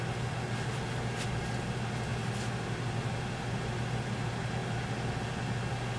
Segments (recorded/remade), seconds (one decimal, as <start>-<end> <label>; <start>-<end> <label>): 0.0-6.0 recorded